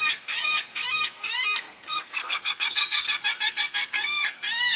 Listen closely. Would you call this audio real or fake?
fake